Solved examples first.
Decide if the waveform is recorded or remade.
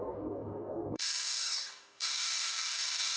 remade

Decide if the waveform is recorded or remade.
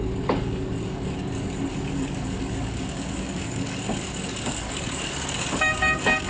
remade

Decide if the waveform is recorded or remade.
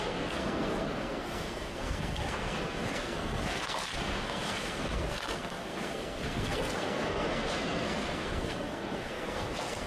remade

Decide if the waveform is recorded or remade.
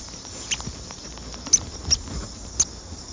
recorded